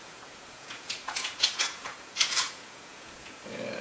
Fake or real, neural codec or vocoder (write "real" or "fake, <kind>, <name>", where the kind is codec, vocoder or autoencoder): fake, vocoder, Vocos